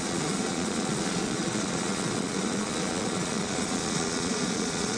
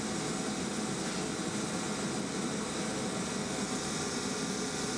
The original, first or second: second